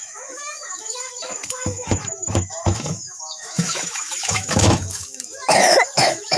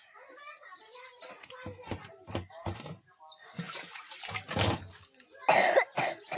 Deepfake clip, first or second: first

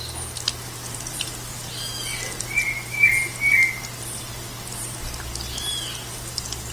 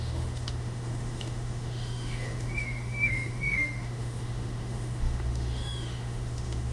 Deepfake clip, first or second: second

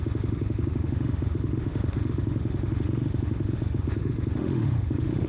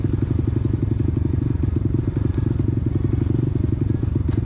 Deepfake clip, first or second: first